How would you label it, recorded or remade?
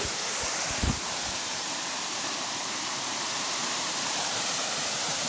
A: remade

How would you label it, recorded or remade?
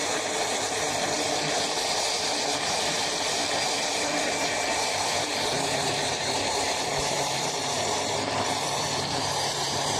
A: remade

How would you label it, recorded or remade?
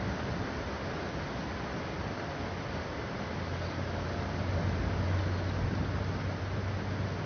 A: recorded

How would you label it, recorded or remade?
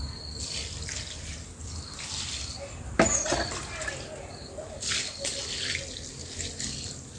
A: recorded